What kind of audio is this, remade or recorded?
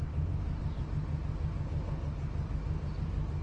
recorded